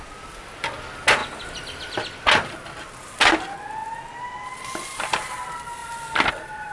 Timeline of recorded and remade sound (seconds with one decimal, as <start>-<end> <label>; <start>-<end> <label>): 0.0-6.7 recorded